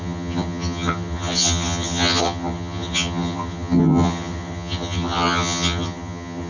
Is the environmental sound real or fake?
fake